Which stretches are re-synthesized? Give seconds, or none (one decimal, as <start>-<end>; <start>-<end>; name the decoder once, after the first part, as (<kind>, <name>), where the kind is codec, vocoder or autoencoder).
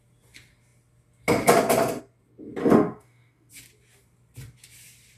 2.6-3.5 (autoencoder, DAC-VAE)